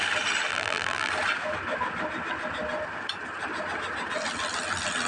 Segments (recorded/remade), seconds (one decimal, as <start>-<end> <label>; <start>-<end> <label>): 0.0-0.5 recorded; 0.5-1.1 remade; 1.1-5.1 recorded